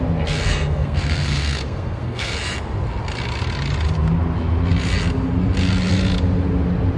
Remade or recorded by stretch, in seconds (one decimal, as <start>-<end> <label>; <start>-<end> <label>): 0.0-0.5 recorded; 0.5-2.3 remade; 2.3-7.0 recorded